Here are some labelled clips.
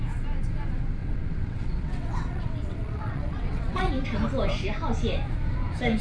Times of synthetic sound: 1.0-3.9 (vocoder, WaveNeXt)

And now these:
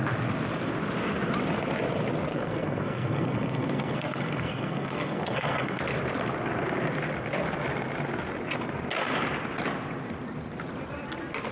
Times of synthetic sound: 2.3-5.8 (codec, SNAC)

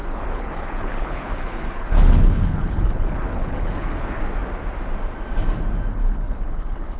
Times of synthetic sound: 0.0-4.2 (codec, HILCodec); 5.9-7.0